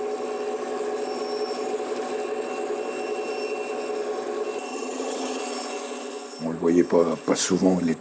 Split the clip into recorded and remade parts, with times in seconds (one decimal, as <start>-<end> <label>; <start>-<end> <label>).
0.0-4.7 recorded; 4.7-5.4 remade; 5.4-8.0 recorded